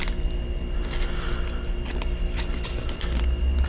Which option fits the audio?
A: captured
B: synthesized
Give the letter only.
A